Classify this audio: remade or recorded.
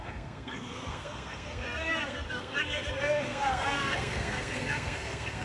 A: remade